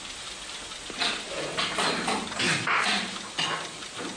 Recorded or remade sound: recorded